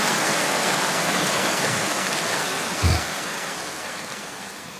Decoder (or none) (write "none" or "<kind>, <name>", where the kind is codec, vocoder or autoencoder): codec, SNAC